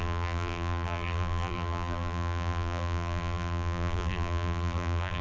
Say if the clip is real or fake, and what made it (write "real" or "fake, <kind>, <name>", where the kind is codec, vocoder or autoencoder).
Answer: fake, vocoder, BigVGAN v2